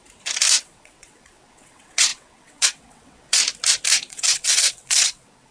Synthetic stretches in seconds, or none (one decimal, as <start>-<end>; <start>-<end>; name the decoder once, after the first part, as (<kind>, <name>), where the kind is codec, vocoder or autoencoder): 0.6-3.4 (vocoder, WaveNeXt); 4.1-5.5